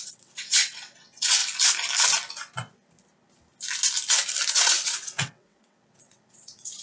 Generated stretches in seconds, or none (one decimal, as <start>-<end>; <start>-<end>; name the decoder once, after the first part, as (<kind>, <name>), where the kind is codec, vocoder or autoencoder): 0.0-1.4 (vocoder, WaveNeXt); 4.5-6.8